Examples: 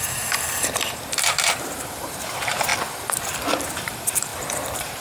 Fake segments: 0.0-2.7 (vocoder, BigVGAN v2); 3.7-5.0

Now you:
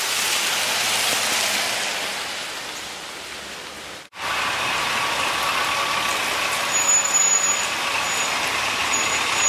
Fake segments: none

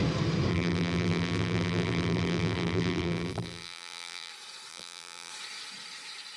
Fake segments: 0.5-4.3 (vocoder, BigVGAN v2); 4.7-5.3

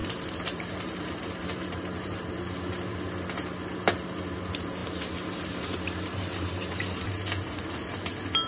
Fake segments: 0.0-2.3 (vocoder, BigVGAN v2); 6.1-7.1

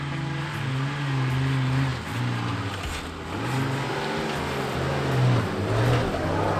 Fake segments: none

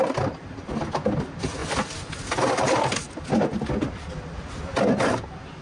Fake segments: 1.6-2.2 (vocoder, BigVGAN v2)

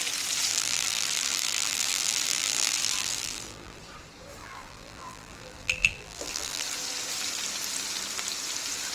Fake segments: 0.5-3.8 (vocoder, BigVGAN v2); 4.4-6.6